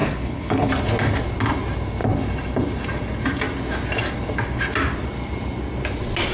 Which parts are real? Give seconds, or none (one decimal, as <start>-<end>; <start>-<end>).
0.7-6.3